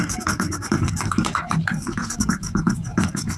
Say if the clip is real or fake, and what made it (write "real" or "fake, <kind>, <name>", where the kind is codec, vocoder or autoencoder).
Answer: fake, codec, DAC